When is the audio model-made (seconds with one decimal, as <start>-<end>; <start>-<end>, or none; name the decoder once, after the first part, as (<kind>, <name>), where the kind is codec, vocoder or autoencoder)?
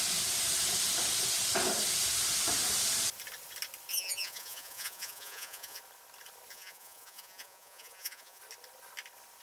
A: 3.9-5.8 (vocoder, Vocos); 6.5-8.4